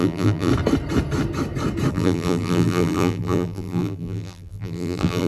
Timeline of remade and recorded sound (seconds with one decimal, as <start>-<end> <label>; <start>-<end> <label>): 0.0-0.5 remade; 0.5-1.9 recorded; 1.9-5.3 remade